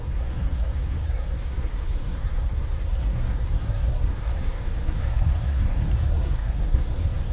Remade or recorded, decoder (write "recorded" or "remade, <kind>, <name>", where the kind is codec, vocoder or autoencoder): remade, codec, SNAC